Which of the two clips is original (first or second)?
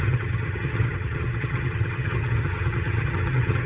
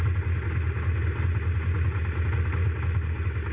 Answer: second